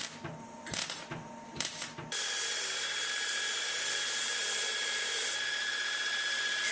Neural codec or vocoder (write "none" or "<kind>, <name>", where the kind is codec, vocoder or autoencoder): vocoder, BigVGAN v2